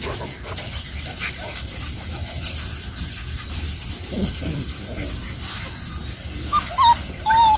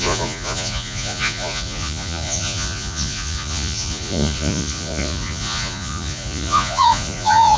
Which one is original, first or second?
first